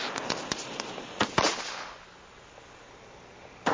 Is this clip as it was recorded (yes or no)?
yes